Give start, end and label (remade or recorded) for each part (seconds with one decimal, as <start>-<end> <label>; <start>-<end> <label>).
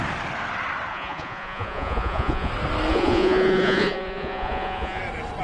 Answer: 0.0-0.9 recorded; 0.9-2.5 remade; 2.5-2.9 recorded; 2.9-5.0 remade; 5.0-5.4 recorded